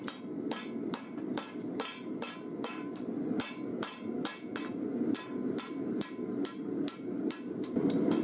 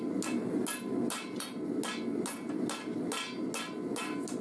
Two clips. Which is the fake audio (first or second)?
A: first